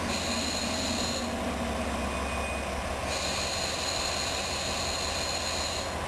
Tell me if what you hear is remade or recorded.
recorded